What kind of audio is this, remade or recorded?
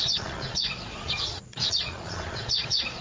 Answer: remade